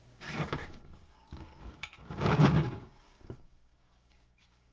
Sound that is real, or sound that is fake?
fake